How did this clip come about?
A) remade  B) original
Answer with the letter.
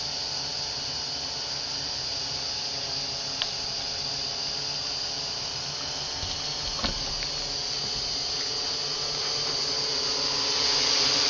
B